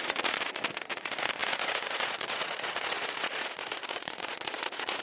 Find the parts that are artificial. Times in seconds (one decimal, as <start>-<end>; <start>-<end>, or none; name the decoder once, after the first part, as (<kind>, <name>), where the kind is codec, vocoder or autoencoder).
0.0-5.0 (vocoder, Vocos)